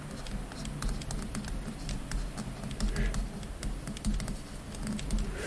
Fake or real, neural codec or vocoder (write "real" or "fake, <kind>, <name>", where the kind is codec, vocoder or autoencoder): real